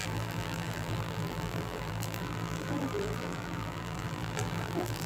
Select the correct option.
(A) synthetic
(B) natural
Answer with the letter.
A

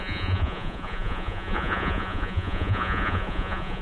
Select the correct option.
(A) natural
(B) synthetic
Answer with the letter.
B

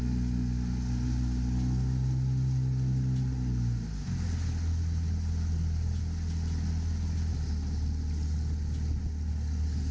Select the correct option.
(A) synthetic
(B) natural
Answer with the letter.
B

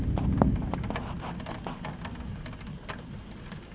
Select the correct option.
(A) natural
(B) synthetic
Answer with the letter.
A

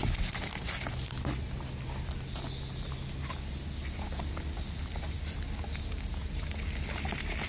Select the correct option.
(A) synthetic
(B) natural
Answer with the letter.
B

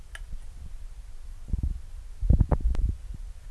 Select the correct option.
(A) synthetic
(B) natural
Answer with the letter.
A